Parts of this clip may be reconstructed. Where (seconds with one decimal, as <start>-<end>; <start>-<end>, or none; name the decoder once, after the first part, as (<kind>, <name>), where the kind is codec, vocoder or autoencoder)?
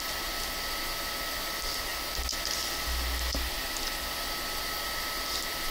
none